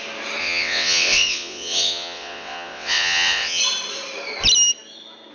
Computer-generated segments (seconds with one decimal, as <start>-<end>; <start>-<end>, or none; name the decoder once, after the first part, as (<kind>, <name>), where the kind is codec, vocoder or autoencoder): 0.4-3.6 (vocoder, WaveNeXt)